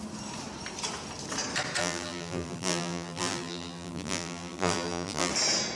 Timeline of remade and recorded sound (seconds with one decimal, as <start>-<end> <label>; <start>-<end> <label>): 0.0-1.8 recorded; 1.8-5.3 remade; 5.3-5.8 recorded